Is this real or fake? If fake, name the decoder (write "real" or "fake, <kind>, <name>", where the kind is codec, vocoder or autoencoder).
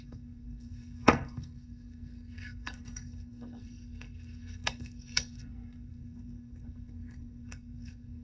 fake, codec, SNAC